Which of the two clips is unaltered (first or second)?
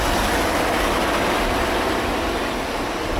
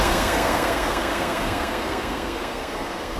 first